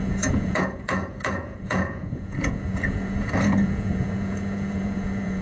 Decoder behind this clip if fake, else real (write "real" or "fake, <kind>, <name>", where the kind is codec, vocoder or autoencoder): fake, vocoder, Vocos